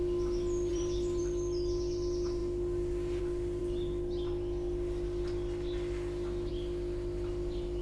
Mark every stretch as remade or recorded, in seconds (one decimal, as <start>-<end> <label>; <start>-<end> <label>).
0.0-0.7 recorded; 0.7-1.2 remade; 1.2-7.8 recorded